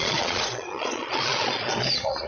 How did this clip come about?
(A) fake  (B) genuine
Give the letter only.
A